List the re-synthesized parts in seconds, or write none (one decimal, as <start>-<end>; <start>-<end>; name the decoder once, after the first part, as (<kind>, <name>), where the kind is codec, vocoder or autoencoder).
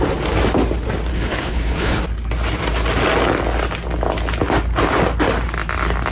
1.1-2.0 (codec, HILCodec)